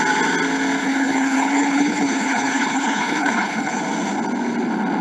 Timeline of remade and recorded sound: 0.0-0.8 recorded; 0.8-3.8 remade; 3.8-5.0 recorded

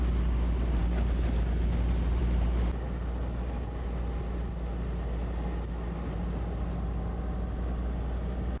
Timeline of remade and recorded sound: 0.0-8.6 recorded

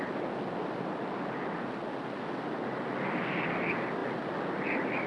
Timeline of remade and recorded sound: 0.0-5.1 recorded

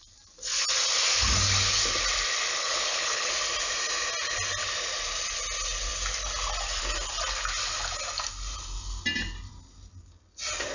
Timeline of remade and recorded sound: 0.0-2.5 recorded; 2.5-3.3 remade; 3.3-10.7 recorded

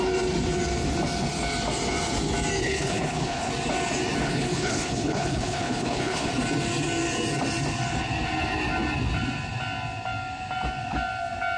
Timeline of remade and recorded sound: 0.0-2.6 recorded; 2.6-3.5 remade; 3.5-4.2 recorded; 4.2-6.3 remade; 6.3-11.6 recorded